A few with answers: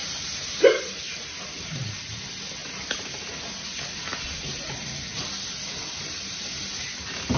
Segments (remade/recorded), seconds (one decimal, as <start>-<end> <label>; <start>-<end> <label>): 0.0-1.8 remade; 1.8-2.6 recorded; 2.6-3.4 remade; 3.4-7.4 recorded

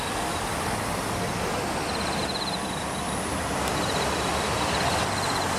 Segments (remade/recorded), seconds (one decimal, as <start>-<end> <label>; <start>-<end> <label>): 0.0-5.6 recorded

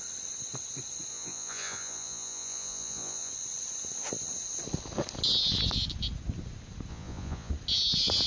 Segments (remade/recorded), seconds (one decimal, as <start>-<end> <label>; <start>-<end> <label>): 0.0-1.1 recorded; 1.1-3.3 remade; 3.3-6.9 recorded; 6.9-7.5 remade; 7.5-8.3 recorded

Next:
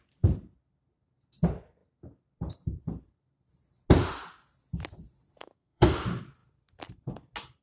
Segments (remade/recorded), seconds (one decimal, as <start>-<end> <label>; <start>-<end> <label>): 0.0-5.4 recorded; 5.4-5.9 remade; 5.9-7.6 recorded